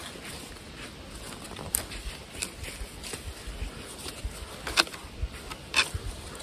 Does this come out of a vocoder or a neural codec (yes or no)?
no